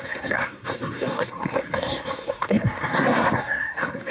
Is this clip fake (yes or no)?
yes